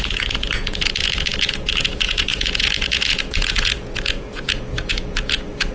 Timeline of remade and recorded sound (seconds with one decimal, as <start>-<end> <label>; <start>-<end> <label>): 0.0-5.7 remade